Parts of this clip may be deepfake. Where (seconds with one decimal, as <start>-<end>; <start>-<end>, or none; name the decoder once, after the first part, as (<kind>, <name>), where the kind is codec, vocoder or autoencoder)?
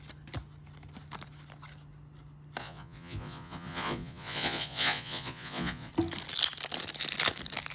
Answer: 2.6-5.9 (vocoder, Vocos)